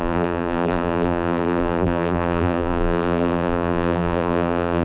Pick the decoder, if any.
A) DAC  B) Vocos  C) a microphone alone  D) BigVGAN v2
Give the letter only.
D